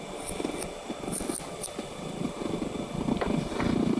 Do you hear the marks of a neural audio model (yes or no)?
no